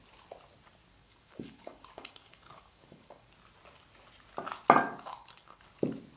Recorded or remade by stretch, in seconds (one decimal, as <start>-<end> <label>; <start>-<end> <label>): 0.0-1.0 recorded; 1.0-3.3 remade; 3.3-4.8 recorded; 4.8-5.6 remade; 5.6-6.2 recorded